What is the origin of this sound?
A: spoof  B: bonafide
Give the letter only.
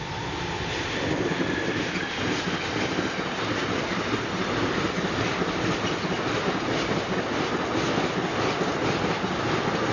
B